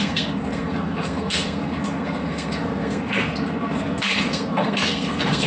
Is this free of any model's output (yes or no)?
no